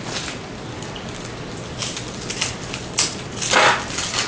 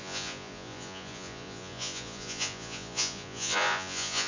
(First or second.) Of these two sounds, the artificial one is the second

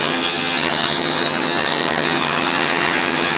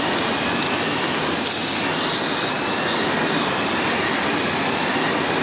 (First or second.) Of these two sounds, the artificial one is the first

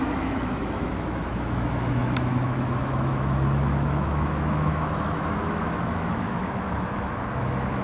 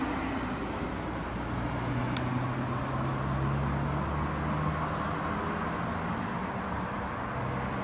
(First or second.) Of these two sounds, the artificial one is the first